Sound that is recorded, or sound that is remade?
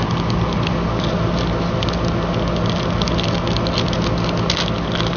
recorded